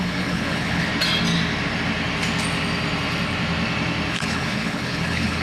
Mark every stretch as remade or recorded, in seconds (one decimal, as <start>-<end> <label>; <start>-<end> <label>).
0.0-0.9 remade; 0.9-4.1 recorded; 4.1-5.4 remade